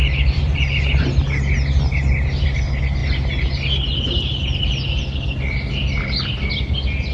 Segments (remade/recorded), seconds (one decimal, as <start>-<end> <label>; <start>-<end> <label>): 0.0-1.1 remade; 1.1-7.1 recorded

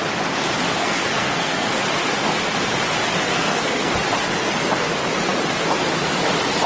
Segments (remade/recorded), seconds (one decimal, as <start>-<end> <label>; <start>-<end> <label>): 0.0-0.8 recorded; 0.8-1.7 remade; 1.7-3.3 recorded; 3.3-3.9 remade; 3.9-6.7 recorded

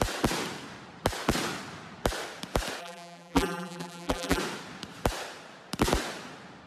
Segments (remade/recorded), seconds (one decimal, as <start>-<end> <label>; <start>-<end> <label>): 0.0-2.8 recorded; 2.8-4.4 remade; 4.4-6.7 recorded

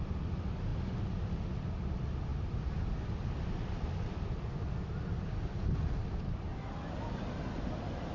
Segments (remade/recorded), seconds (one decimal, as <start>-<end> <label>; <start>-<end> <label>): 0.0-8.1 recorded

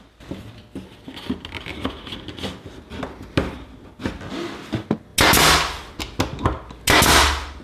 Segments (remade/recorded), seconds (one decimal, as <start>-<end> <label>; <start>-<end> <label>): 0.0-7.6 recorded